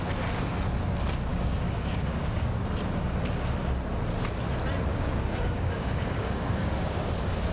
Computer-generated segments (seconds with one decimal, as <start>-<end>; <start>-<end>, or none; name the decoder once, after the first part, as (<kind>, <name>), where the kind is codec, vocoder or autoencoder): 1.3-2.6 (codec, DAC); 4.9-7.1